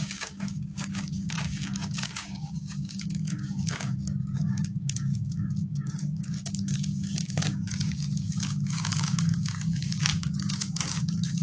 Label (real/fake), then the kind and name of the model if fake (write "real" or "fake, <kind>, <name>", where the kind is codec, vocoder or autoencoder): fake, codec, DAC